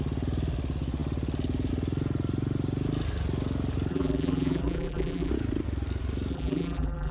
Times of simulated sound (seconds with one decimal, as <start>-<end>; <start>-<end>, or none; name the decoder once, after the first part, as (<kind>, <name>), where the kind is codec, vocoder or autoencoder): 3.9-5.3 (vocoder, BigVGAN v2); 6.3-7.1